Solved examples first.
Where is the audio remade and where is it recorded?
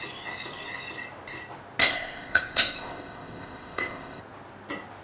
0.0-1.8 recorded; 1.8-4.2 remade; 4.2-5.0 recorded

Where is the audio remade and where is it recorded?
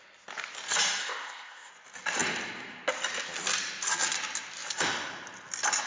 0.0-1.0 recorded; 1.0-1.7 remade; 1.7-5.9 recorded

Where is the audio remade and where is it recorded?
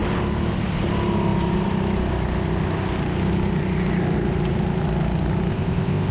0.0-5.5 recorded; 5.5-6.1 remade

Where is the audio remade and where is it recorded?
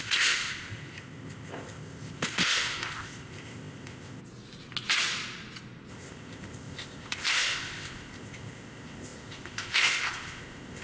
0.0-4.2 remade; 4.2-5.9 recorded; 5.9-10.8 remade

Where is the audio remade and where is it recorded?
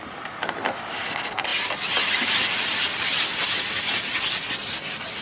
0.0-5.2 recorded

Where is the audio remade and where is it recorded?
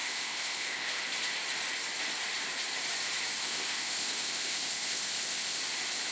0.0-1.0 remade; 1.0-3.4 recorded; 3.4-5.6 remade; 5.6-6.1 recorded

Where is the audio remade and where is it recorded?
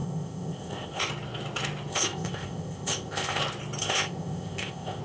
0.0-1.1 remade; 1.1-1.9 recorded; 1.9-3.4 remade; 3.4-3.8 recorded; 3.8-5.0 remade